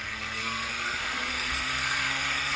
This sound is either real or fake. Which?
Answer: fake